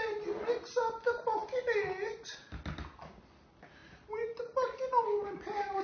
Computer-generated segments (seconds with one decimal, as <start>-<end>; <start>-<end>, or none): 3.8-4.8